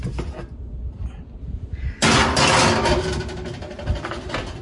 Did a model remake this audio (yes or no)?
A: no